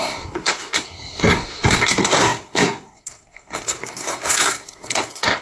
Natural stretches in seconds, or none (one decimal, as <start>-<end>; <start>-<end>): none